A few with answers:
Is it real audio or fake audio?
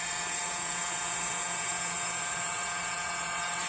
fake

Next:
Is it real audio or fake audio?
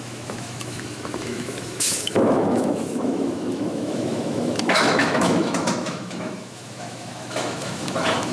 fake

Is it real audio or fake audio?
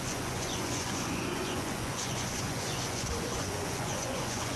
fake